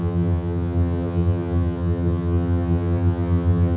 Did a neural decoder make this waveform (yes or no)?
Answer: yes